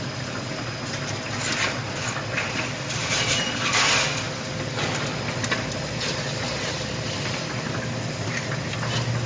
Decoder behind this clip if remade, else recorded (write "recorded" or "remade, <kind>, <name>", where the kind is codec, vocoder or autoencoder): recorded